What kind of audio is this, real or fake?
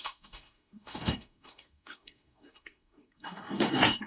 fake